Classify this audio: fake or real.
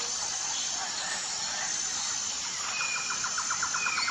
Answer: real